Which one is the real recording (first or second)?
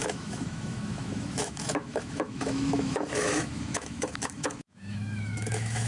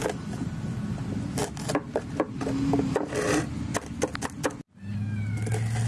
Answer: second